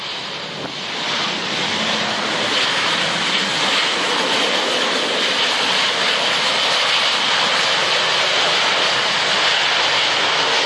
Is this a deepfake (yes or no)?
no